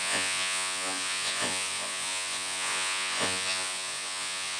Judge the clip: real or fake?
fake